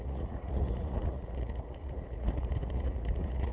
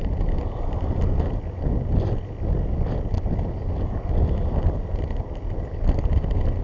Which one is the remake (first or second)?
first